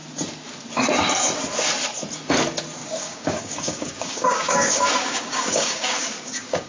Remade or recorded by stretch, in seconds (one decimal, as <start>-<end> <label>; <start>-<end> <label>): 0.0-2.8 recorded; 2.8-6.7 remade